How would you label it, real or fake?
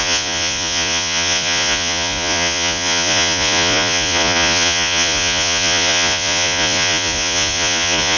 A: fake